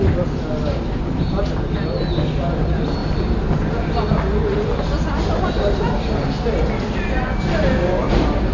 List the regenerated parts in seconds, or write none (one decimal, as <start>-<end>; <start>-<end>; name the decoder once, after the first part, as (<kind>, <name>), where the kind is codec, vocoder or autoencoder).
none